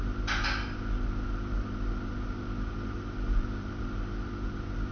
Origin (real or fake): real